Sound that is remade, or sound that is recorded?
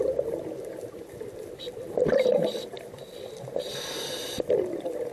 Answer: recorded